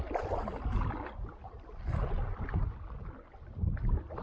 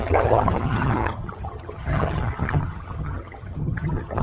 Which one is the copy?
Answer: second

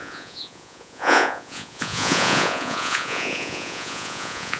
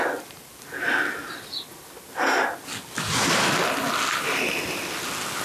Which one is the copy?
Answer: first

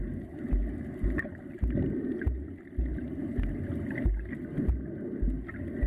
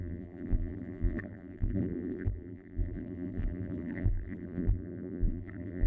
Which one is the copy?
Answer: second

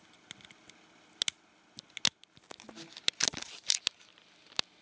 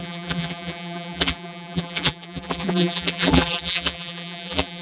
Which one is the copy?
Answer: second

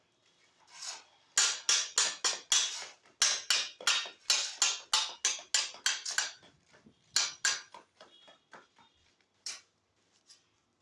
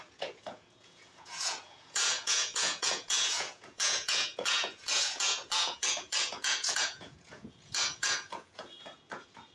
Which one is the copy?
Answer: second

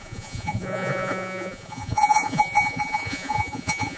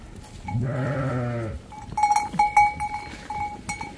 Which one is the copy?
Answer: first